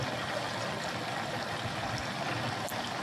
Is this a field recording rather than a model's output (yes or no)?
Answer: yes